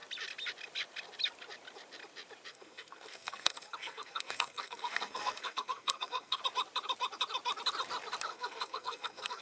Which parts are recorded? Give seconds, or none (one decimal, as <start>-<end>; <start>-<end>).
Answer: 0.0-2.5; 6.4-8.3